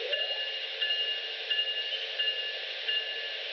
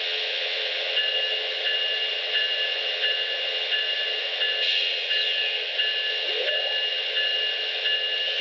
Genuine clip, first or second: first